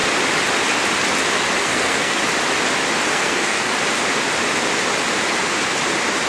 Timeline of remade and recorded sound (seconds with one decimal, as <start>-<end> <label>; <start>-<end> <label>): 0.0-1.6 recorded; 1.6-2.2 remade; 2.2-3.1 recorded; 3.1-3.7 remade; 3.7-6.3 recorded